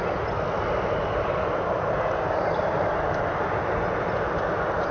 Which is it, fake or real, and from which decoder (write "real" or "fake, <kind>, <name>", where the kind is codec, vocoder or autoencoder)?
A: real